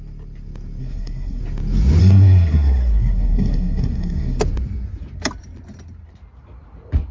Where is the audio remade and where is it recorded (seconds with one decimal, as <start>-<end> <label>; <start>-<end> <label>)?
0.0-0.8 recorded; 0.8-1.4 remade; 1.4-2.0 recorded; 2.0-4.4 remade; 4.4-7.1 recorded